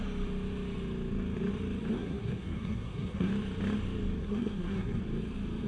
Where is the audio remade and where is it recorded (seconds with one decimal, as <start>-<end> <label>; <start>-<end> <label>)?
0.0-1.9 recorded; 1.9-3.3 remade; 3.3-4.2 recorded; 4.2-5.0 remade; 5.0-5.7 recorded